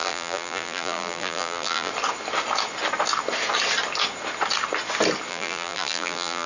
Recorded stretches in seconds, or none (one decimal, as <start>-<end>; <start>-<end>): 1.9-5.3